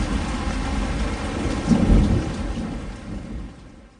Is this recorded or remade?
recorded